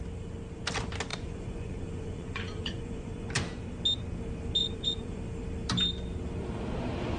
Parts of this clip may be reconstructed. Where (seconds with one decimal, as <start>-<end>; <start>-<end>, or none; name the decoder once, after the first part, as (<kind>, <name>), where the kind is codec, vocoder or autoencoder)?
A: 1.1-3.3 (vocoder, Vocos); 4.6-5.2